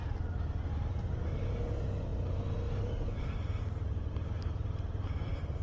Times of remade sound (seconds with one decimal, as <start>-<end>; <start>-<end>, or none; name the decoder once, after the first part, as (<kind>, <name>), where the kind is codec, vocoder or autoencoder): none